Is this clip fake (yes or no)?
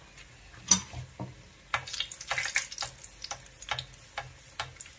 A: no